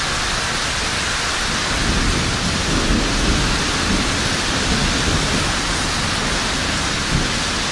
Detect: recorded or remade recorded